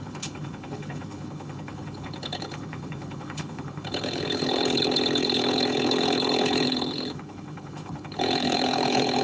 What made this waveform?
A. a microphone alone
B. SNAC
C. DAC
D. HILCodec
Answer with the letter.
D